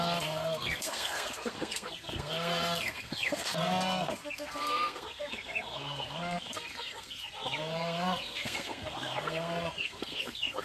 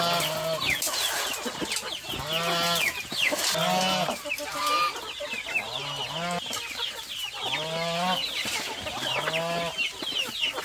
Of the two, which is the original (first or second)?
second